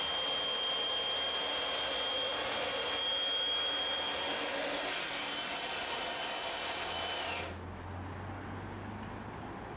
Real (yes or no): yes